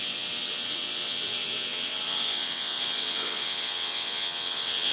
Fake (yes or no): yes